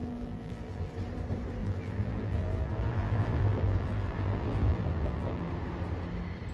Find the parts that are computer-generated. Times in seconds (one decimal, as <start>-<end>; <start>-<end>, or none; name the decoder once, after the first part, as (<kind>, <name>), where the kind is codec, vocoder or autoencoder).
0.0-0.9 (vocoder, BigVGAN v2); 1.6-5.5